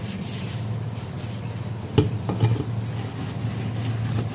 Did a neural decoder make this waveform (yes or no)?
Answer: no